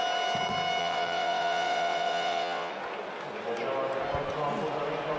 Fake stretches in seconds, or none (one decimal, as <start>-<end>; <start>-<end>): 0.8-2.7

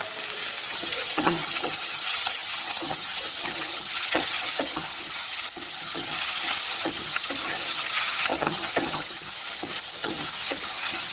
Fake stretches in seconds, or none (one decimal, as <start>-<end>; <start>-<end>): 0.7-11.1

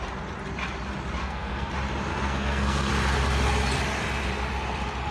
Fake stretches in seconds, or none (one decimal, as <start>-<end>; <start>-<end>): 1.2-1.7; 2.1-2.9

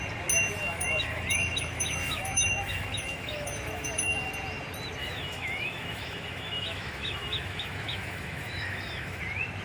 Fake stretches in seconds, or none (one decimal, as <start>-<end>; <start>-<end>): 0.6-4.3; 5.0-9.2

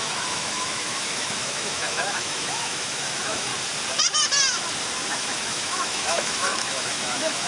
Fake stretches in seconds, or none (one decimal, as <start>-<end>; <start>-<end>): 0.0-3.5; 5.1-7.5

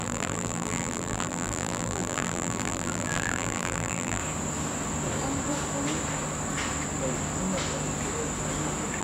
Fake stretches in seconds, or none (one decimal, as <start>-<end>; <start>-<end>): 0.0-4.2